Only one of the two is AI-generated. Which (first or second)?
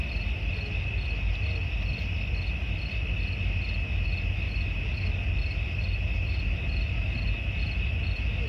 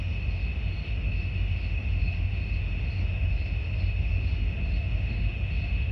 second